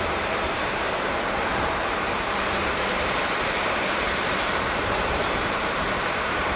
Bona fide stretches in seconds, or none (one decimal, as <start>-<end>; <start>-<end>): none